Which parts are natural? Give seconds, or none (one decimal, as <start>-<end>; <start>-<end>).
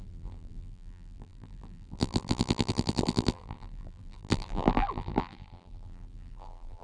none